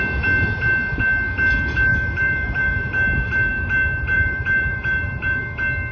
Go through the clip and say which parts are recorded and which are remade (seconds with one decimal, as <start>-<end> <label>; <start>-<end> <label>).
0.0-1.9 recorded; 1.9-5.4 remade; 5.4-5.9 recorded